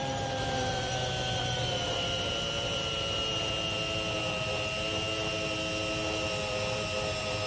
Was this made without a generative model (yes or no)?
yes